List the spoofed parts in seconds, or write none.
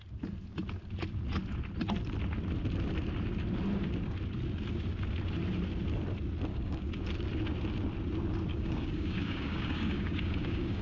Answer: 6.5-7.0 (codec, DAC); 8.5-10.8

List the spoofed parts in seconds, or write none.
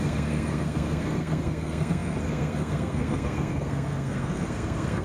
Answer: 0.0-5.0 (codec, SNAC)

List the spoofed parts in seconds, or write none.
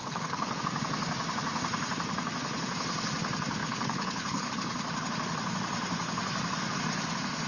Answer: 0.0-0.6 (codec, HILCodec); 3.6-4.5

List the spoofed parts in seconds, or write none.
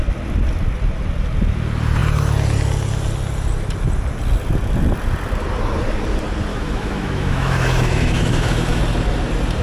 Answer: 6.5-8.8 (autoencoder, DAC-VAE)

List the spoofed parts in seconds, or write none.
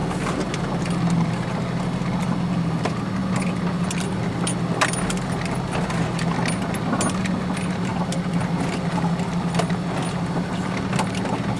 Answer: none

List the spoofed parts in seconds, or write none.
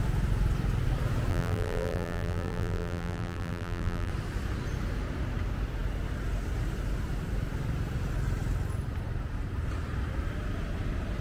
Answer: 1.3-4.1 (vocoder, BigVGAN v2)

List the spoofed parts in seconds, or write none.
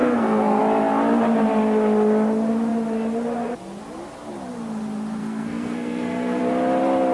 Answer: 0.0-0.6 (codec, SNAC); 5.2-6.4